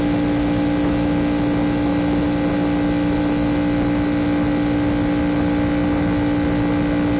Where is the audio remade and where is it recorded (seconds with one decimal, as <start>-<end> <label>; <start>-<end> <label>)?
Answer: 0.0-7.2 recorded